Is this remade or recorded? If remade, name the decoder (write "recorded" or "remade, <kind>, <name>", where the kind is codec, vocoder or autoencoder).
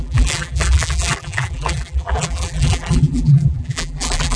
remade, vocoder, BigVGAN v2